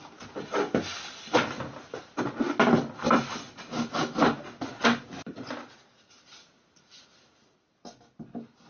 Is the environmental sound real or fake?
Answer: real